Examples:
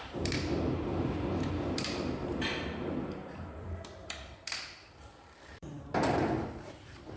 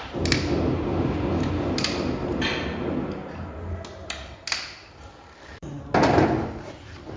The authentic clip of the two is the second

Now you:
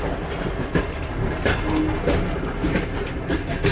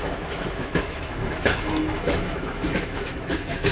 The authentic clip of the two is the first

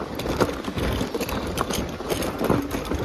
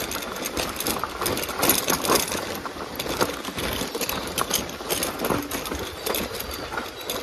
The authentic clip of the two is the second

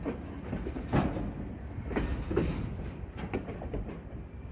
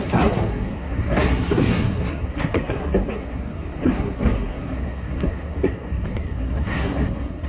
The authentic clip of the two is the first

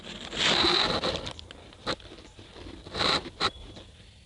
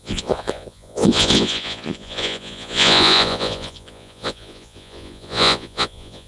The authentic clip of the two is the first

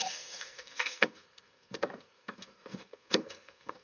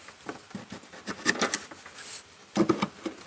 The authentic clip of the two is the second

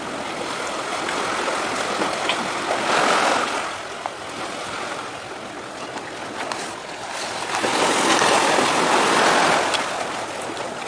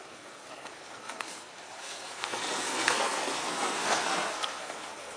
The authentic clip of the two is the first